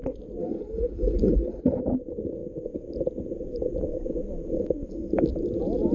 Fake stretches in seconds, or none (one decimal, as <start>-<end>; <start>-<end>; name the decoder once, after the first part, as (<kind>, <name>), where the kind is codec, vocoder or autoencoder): 0.4-1.8 (codec, HILCodec)